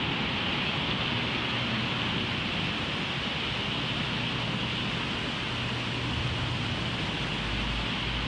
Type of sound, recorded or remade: recorded